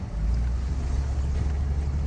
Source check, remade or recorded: recorded